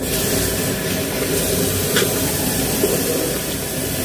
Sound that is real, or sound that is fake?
real